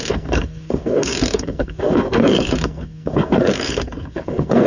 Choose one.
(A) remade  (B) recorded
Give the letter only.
A